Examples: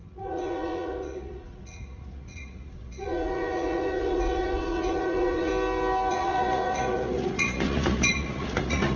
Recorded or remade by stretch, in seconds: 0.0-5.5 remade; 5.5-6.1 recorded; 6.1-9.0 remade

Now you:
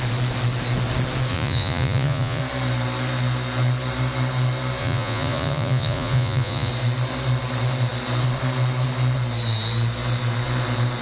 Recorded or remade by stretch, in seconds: 0.0-1.3 recorded; 1.3-2.4 remade; 2.4-4.8 recorded; 4.8-6.7 remade; 6.7-11.0 recorded

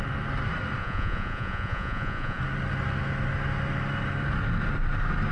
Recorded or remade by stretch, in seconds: 0.0-0.8 recorded; 0.8-2.4 remade; 2.4-5.3 recorded

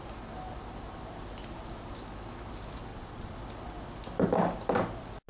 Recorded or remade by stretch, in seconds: 0.0-2.9 recorded; 2.9-3.4 remade; 3.4-5.3 recorded